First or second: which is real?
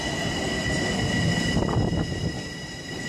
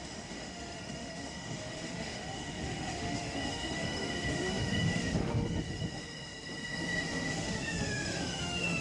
first